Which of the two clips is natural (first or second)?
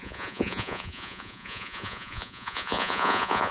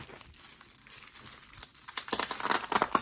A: second